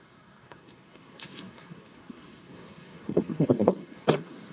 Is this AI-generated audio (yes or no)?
yes